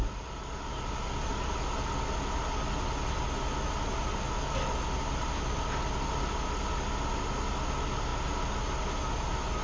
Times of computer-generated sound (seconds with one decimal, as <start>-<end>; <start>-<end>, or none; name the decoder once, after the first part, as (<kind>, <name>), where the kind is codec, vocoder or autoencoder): none